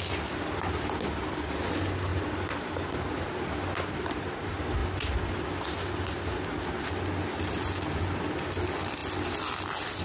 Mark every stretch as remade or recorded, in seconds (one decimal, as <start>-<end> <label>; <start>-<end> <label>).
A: 0.0-2.1 recorded; 2.1-3.3 remade; 3.3-10.0 recorded